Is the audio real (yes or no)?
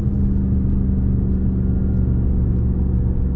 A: yes